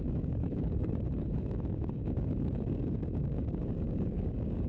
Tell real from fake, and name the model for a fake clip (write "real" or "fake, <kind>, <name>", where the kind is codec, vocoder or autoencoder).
fake, codec, DAC